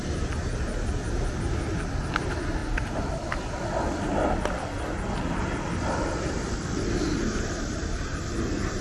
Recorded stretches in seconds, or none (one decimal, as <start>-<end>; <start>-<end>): 0.0-2.6; 3.4-8.8